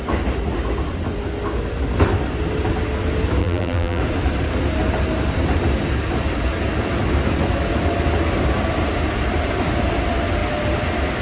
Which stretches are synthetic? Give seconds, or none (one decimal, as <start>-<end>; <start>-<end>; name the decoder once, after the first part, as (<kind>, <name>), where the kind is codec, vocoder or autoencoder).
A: 3.4-4.0 (vocoder, BigVGAN v2)